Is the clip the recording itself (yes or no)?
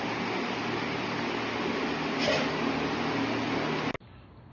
yes